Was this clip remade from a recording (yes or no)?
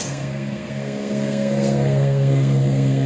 yes